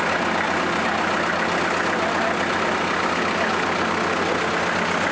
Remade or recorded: recorded